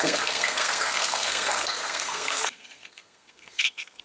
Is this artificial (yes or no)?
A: yes